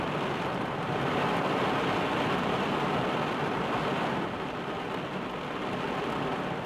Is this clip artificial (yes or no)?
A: no